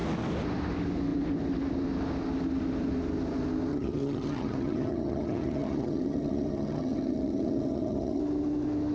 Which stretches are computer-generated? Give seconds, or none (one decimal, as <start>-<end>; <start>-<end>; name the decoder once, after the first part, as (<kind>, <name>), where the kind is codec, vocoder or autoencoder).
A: 3.7-8.2 (vocoder, HiFi-GAN)